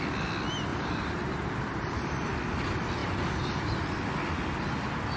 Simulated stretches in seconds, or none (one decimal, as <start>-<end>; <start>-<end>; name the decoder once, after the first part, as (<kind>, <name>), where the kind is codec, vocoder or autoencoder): 0.7-2.3 (vocoder, BigVGAN v2)